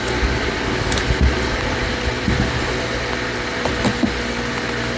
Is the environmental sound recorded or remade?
recorded